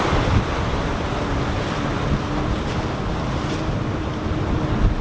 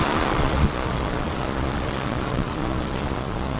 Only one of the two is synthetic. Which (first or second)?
second